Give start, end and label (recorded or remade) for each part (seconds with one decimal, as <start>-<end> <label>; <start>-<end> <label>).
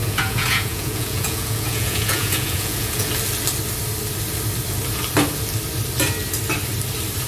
0.0-3.1 remade; 3.1-7.3 recorded